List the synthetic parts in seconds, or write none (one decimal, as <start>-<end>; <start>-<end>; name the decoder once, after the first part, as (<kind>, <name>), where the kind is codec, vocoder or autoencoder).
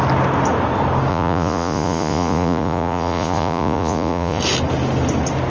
1.1-4.4 (vocoder, Vocos)